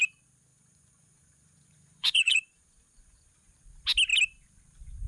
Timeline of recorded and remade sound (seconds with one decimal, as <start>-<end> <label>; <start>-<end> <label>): 0.0-0.5 recorded; 0.5-3.3 remade; 3.3-5.1 recorded